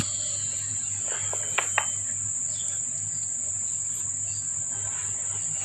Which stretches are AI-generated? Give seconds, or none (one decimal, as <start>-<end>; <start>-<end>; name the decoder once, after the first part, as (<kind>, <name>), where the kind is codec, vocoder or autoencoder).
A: none